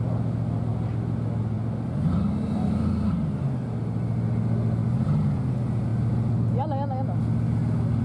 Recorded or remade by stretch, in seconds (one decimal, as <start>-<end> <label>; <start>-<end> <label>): 0.0-8.0 recorded